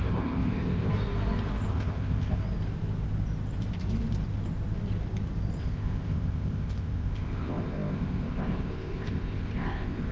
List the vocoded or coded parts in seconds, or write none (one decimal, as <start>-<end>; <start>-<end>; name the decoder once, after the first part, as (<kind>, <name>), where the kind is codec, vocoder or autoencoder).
0.0-0.9 (codec, ZipCodec); 1.7-2.4; 5.6-10.1